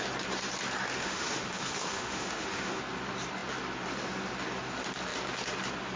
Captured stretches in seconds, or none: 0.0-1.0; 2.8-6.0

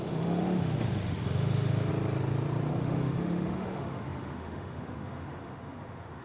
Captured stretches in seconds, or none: 1.9-2.7

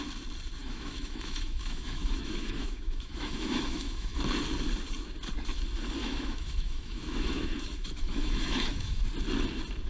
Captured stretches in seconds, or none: 0.0-0.6; 4.2-6.0; 9.0-9.9

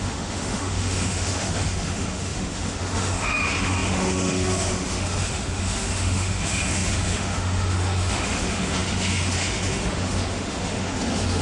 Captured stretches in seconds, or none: none

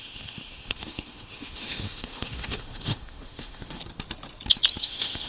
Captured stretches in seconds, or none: 3.8-4.8

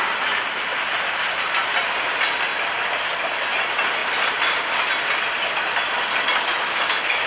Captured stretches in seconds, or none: 0.0-6.5

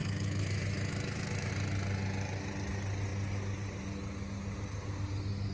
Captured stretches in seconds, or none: 1.5-5.5